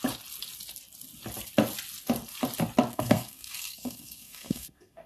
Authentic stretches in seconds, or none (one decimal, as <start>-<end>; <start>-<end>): 0.0-2.9